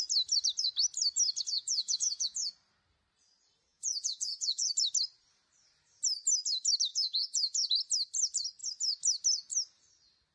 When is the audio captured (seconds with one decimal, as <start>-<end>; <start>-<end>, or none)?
0.0-1.5; 2.5-3.7; 4.7-6.9; 7.7-10.3